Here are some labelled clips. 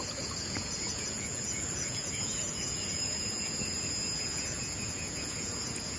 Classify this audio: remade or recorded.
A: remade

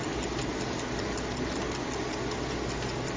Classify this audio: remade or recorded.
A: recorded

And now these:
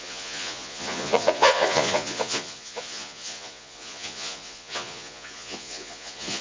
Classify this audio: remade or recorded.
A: remade